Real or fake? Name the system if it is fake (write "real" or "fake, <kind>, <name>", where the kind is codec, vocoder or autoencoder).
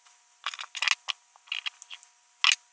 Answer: real